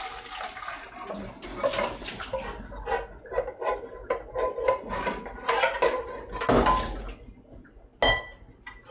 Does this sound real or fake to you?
real